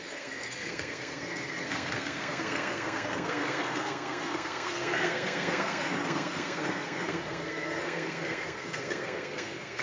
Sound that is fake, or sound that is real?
fake